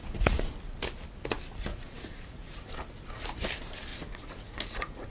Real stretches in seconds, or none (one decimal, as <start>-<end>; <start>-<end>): 0.5-1.7; 2.8-3.9